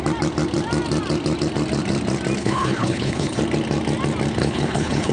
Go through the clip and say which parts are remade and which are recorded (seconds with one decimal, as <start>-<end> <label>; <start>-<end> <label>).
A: 0.0-2.4 recorded; 2.4-3.4 remade; 3.4-4.4 recorded; 4.4-5.1 remade